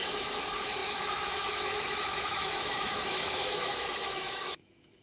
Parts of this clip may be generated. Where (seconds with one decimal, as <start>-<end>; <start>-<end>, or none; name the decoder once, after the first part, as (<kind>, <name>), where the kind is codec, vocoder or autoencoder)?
0.0-5.0 (autoencoder, DAC-VAE)

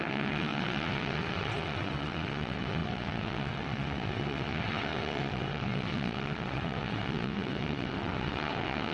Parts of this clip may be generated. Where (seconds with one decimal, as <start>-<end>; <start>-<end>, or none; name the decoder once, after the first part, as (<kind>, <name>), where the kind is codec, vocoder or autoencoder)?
0.0-8.9 (vocoder, WaveNeXt)

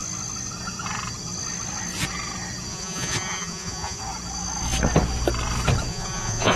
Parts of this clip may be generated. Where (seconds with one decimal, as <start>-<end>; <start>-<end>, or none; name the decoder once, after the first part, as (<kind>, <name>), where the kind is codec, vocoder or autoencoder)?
2.7-4.0 (vocoder, Vocos); 5.9-6.6

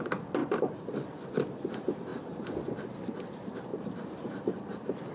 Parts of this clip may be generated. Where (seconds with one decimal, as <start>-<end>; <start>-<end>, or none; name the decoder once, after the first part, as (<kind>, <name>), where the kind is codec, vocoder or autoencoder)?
0.4-1.3 (vocoder, BigVGAN v2); 3.7-5.1

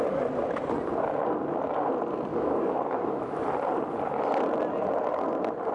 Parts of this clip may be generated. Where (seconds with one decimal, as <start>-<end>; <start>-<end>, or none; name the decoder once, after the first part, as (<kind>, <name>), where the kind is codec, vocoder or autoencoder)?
2.3-3.2 (codec, DAC)

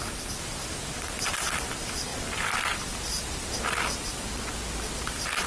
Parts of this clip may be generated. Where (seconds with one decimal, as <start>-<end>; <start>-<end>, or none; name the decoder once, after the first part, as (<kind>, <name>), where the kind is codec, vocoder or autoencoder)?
none

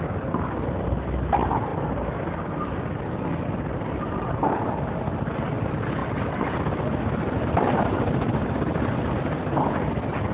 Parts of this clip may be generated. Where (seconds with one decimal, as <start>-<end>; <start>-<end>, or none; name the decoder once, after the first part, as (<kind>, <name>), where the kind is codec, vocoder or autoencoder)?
1.7-2.8 (vocoder, BigVGAN v2); 6.0-9.7

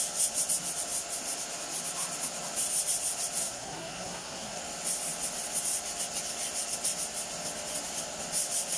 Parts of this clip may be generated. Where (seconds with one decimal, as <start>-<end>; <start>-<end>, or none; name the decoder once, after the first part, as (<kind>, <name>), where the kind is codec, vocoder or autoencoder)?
3.4-4.6 (codec, SNAC)